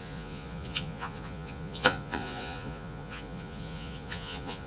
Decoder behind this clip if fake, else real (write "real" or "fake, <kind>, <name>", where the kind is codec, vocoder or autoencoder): fake, vocoder, Vocos